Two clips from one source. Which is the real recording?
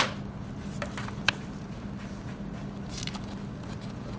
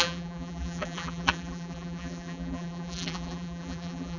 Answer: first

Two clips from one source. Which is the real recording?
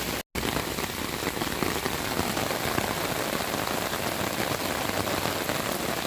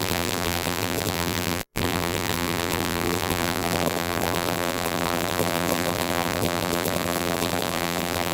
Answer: first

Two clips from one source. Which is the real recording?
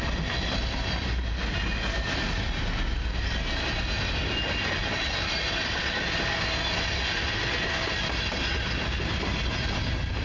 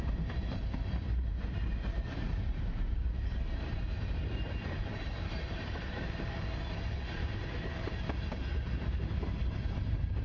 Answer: first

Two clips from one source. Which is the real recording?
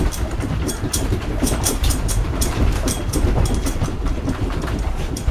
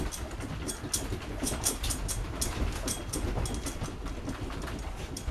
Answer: second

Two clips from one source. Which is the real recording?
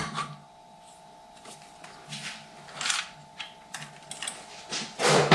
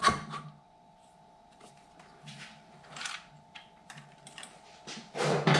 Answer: first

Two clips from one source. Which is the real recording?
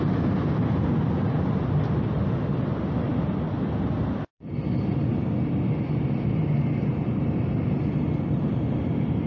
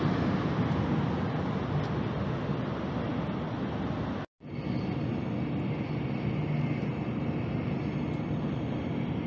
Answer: second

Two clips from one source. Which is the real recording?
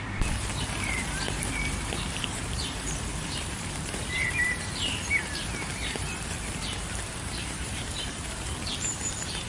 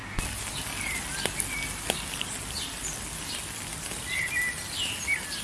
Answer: second